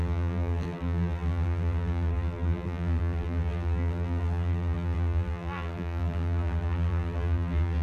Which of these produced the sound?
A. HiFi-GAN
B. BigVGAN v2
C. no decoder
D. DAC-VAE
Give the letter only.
B